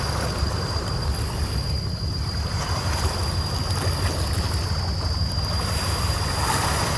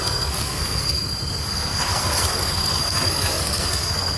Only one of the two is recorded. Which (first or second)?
first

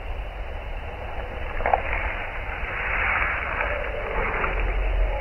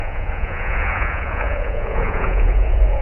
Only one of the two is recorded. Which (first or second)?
first